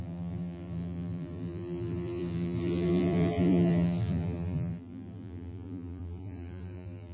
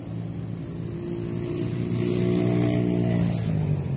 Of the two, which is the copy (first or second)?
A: first